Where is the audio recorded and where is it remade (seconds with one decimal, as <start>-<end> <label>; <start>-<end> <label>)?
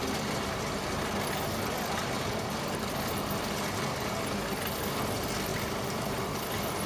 0.0-5.5 recorded; 5.5-6.5 remade; 6.5-6.9 recorded